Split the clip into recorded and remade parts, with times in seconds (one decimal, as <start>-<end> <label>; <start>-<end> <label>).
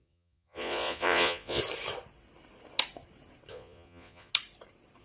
0.0-1.6 remade; 1.6-3.5 recorded; 3.5-4.3 remade; 4.3-5.0 recorded